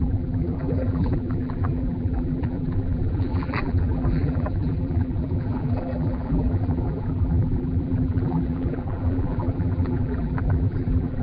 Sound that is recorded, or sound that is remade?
remade